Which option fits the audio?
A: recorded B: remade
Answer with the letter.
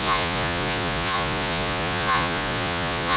B